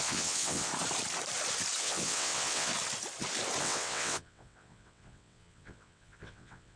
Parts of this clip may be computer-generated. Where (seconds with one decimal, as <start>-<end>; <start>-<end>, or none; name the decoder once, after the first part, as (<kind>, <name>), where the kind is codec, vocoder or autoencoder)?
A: 0.0-0.7 (vocoder, WaveNeXt); 1.8-2.7; 3.6-6.8